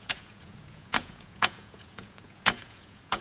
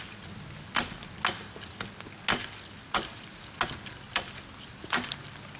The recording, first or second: second